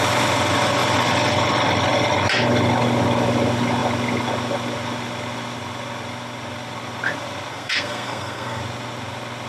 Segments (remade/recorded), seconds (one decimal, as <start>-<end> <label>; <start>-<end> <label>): 0.0-7.5 recorded; 7.5-8.6 remade; 8.6-9.5 recorded